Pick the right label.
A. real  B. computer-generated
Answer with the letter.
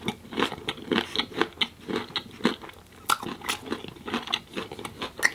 A